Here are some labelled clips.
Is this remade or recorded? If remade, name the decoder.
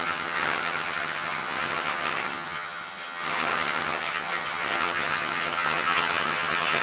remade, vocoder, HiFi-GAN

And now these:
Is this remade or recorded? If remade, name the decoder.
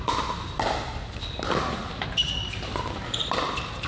recorded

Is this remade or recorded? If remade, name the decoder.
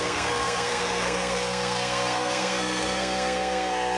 remade, codec, SNAC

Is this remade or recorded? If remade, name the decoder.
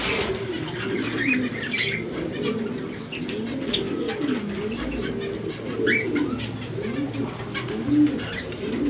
recorded